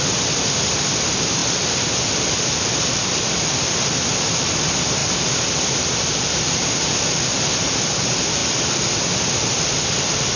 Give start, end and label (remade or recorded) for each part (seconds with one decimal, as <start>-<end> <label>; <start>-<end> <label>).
0.0-1.4 recorded; 1.4-3.5 remade; 3.5-10.4 recorded